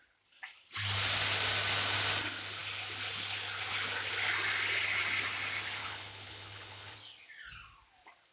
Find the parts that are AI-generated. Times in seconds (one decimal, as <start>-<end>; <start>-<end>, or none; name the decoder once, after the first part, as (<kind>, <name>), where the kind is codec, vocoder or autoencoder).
5.8-7.0 (codec, HILCodec)